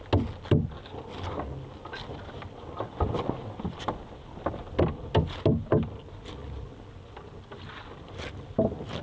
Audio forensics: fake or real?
real